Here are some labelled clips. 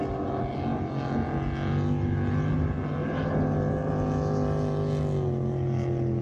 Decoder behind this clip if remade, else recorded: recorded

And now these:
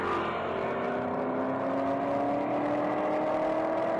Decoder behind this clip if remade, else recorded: recorded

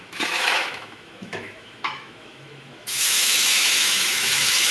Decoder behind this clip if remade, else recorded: remade, autoencoder, DAC-VAE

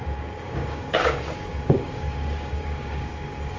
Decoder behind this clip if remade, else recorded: remade, codec, DAC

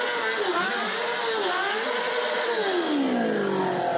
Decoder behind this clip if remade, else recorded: recorded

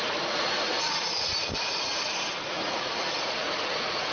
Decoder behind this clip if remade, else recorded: remade, vocoder, Vocos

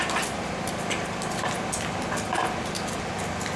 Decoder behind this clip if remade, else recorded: recorded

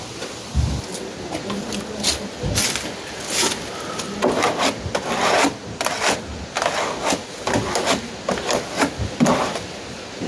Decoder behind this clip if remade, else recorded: recorded